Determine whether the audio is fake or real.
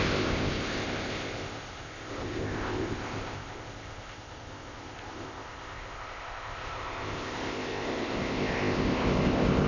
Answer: fake